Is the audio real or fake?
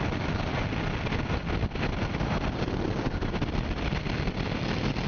real